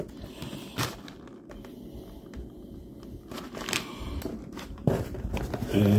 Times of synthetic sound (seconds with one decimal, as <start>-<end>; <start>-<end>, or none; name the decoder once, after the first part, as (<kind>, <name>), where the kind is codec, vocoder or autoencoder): 3.9-5.4 (vocoder, BigVGAN v2)